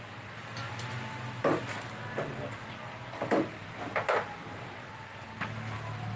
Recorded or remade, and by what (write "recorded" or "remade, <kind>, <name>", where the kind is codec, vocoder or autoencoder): recorded